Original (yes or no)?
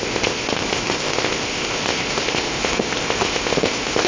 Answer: no